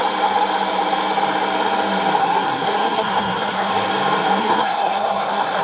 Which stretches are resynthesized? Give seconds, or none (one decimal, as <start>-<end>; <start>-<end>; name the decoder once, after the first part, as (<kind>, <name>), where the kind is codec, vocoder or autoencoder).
2.2-3.7 (codec, SNAC); 4.4-5.6